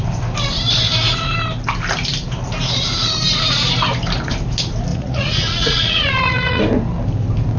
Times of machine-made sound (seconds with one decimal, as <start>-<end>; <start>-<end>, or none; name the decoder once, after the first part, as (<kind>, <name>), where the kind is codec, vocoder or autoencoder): 4.9-6.6 (vocoder, Vocos)